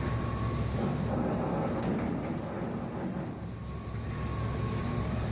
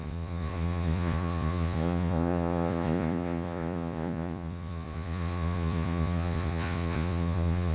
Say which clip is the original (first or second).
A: first